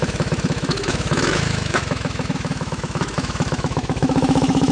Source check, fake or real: fake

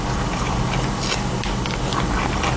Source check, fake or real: real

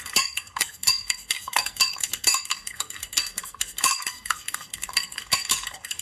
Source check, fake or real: fake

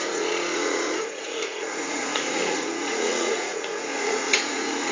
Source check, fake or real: fake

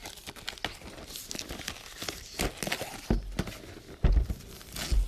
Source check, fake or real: real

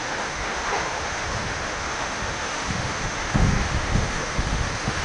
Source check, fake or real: fake